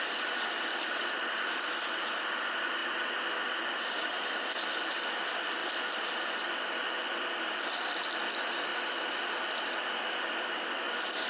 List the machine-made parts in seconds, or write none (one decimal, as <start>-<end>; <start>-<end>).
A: 0.0-2.8; 3.4-8.7; 9.5-11.3